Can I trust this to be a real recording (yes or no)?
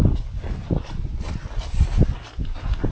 yes